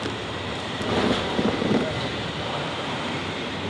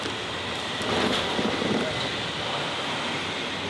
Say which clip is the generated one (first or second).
first